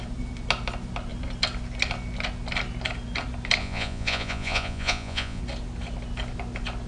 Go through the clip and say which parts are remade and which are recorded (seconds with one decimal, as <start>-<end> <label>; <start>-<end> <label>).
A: 0.0-3.6 recorded; 3.6-5.4 remade; 5.4-6.9 recorded